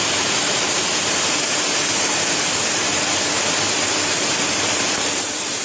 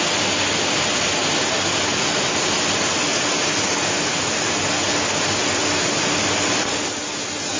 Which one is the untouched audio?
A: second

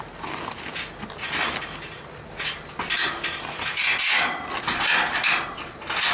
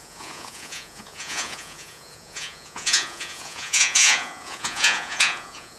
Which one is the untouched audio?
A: first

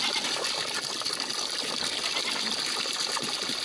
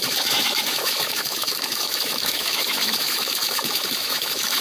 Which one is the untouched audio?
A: first